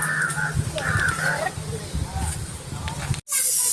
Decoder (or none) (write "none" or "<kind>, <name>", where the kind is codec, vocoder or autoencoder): none